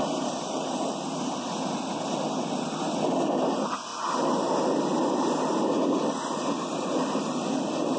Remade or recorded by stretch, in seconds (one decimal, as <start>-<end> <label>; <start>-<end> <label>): 0.0-8.0 recorded